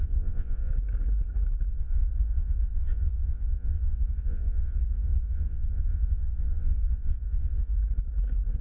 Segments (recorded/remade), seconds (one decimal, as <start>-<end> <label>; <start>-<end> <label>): 0.0-0.7 remade; 0.7-1.7 recorded; 1.7-7.8 remade; 7.8-8.6 recorded